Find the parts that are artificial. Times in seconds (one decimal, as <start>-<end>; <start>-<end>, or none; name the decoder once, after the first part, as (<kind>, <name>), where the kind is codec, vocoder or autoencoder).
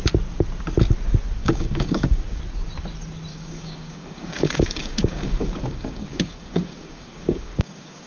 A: 1.4-2.4 (codec, DAC); 3.3-8.1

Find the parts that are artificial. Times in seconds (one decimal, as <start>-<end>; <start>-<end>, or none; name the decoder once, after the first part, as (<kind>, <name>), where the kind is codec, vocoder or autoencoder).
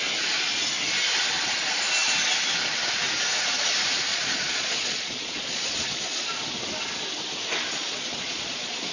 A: 4.1-6.4 (vocoder, Vocos); 7.8-8.9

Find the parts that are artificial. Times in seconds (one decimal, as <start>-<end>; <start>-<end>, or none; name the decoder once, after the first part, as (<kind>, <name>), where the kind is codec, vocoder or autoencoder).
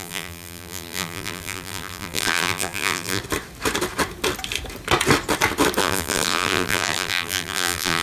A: 0.0-3.2 (vocoder, BigVGAN v2); 5.8-8.0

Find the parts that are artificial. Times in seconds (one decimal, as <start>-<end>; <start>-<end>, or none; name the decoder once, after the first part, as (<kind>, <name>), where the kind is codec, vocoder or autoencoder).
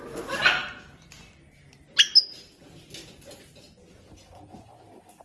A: none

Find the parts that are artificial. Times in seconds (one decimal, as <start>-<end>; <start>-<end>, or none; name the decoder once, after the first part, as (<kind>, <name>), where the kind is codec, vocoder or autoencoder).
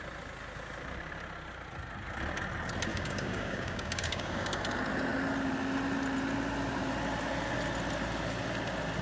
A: 2.9-4.6 (codec, DAC)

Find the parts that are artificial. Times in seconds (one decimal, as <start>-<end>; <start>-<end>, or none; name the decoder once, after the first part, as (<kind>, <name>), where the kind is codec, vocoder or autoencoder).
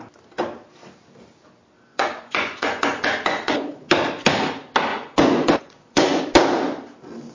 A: 1.9-3.9 (vocoder, Vocos); 4.9-6.2